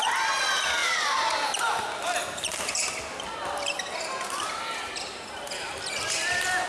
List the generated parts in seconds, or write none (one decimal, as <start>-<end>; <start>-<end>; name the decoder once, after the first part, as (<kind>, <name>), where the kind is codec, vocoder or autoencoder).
none